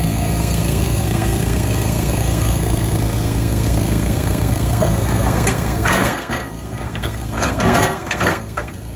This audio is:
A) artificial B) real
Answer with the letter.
A